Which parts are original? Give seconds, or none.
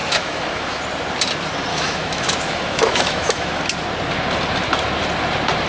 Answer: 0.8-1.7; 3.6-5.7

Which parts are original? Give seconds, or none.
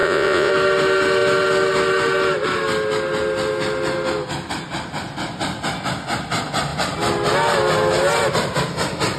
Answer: 0.5-9.2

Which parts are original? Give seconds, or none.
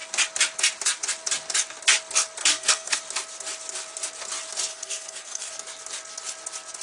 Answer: 0.0-2.4; 3.0-4.7; 5.5-6.8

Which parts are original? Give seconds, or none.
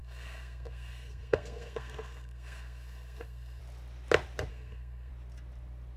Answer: 3.6-4.5; 5.1-6.0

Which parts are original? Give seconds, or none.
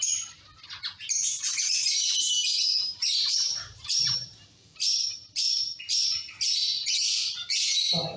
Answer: 0.0-1.5; 5.9-8.2